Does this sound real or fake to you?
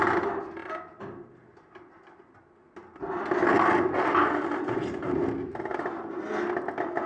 real